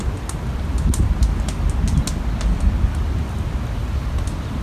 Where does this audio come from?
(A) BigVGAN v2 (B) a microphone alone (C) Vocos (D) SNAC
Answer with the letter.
B